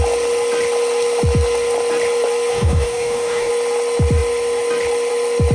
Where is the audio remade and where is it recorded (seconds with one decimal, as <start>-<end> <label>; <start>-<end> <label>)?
0.0-2.5 recorded; 2.5-3.5 remade; 3.5-5.5 recorded